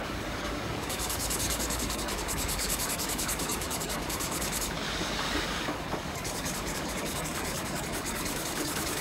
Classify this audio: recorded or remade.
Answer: remade